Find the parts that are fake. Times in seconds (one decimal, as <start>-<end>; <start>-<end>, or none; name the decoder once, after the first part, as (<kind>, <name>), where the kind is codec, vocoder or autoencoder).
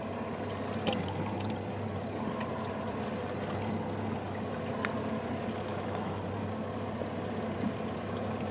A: 5.7-6.2 (autoencoder, DAC-VAE)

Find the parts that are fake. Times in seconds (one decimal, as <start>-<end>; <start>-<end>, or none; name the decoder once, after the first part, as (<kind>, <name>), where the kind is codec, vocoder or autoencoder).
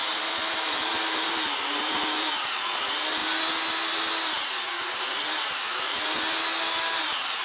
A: 0.0-2.3 (vocoder, BigVGAN v2)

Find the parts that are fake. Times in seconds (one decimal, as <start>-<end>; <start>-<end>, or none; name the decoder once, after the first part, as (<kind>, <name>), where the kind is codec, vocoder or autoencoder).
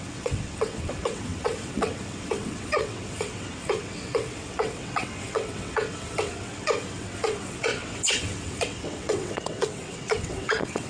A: 0.0-10.9 (vocoder, WaveNeXt)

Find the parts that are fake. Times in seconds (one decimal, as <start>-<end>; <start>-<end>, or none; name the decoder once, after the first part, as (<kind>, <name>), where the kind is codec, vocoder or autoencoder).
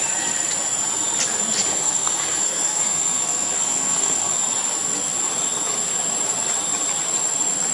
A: 1.7-4.3 (codec, SNAC)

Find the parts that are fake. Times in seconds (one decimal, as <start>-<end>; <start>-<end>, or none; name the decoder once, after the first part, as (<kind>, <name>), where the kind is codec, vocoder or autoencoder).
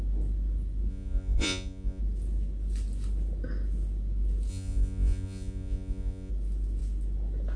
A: 0.9-2.0 (vocoder, Vocos); 4.5-6.3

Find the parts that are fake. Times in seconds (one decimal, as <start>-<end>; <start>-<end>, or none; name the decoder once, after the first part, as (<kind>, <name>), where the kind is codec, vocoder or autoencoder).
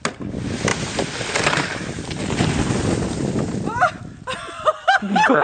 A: none